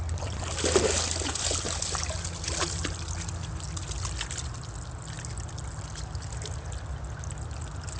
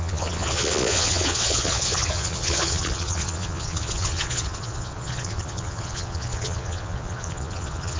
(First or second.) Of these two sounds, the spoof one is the second